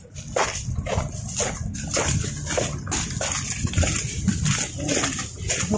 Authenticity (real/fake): real